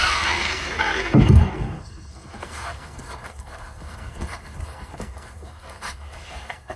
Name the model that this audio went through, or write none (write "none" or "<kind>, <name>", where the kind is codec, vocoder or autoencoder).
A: codec, SNAC